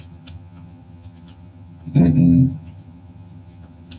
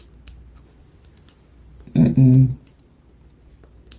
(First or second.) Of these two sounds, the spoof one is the first